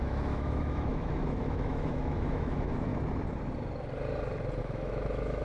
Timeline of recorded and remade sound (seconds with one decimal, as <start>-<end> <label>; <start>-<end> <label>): 0.0-2.9 remade; 2.9-4.6 recorded; 4.6-5.4 remade